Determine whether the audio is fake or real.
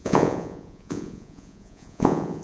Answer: fake